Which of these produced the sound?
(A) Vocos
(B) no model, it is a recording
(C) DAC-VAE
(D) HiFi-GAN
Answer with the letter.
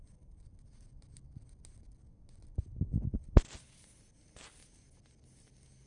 B